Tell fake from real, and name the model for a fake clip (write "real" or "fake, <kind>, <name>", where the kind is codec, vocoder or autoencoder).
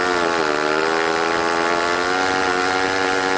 real